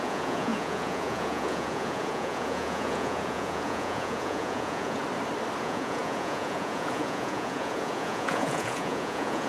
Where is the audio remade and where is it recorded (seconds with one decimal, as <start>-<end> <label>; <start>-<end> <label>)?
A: 0.0-5.0 remade; 5.0-5.6 recorded; 5.6-9.5 remade